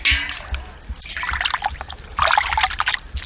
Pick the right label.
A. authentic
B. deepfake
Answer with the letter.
A